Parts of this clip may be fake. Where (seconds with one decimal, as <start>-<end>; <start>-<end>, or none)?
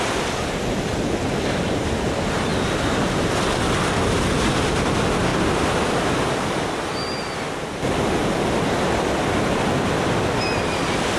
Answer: none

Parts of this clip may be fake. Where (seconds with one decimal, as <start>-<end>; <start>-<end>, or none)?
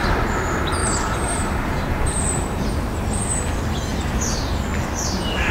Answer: 0.8-3.2; 3.9-4.4